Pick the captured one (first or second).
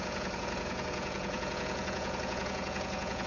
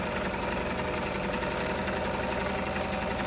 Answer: second